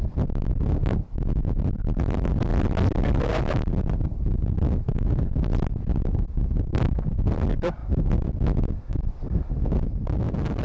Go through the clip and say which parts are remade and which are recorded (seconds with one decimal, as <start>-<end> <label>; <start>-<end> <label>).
0.0-2.5 remade; 2.5-3.2 recorded; 3.2-5.5 remade; 5.5-7.3 recorded; 7.3-7.8 remade; 7.8-9.9 recorded; 9.9-10.6 remade